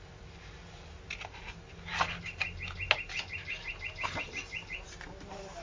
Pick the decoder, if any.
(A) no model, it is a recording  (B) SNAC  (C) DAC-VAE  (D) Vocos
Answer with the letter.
A